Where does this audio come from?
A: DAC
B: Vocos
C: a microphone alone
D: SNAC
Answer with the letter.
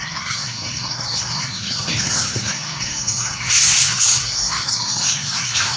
D